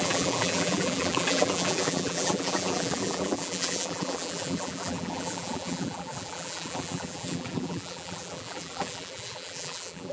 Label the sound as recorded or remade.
remade